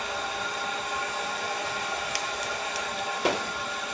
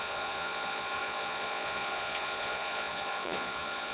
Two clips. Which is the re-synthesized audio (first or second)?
second